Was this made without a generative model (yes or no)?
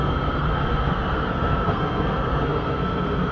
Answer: no